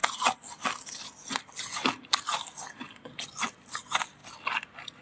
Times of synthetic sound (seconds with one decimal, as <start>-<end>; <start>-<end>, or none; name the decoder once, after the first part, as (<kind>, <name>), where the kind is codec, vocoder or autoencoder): none